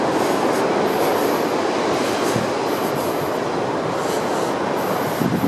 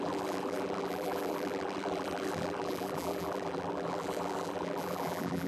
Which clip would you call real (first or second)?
first